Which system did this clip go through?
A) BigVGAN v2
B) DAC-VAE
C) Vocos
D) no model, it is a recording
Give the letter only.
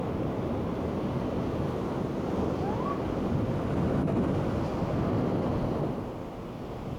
D